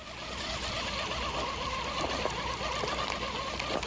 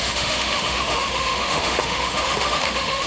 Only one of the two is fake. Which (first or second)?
second